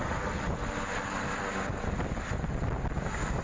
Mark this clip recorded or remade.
recorded